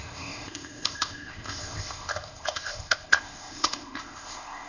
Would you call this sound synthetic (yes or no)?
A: yes